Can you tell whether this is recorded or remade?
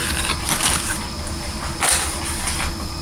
recorded